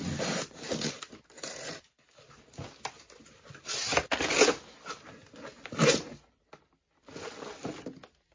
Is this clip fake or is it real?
real